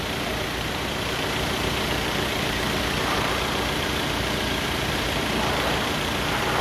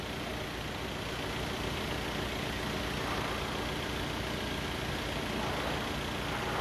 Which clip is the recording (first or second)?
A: second